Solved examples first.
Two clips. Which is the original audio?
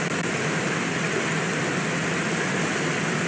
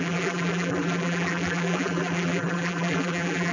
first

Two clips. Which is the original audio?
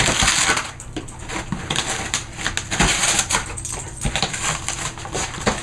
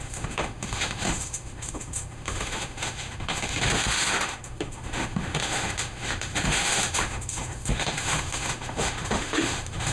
first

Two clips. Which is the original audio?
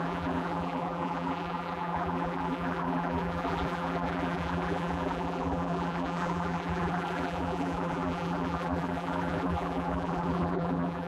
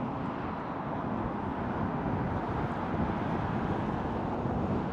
second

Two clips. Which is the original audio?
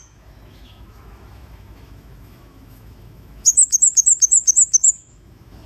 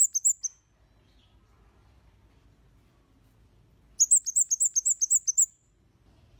second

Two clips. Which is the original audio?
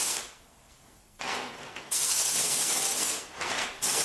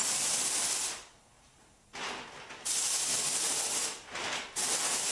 second